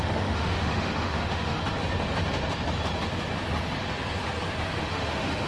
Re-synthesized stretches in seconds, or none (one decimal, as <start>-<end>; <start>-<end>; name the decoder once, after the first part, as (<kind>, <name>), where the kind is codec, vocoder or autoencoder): 0.0-1.6 (autoencoder, DAC-VAE); 4.9-5.5